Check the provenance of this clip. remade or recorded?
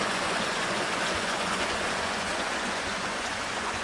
remade